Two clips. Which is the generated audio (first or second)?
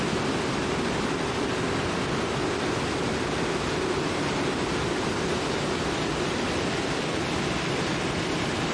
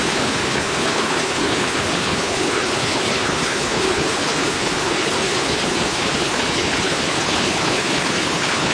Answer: second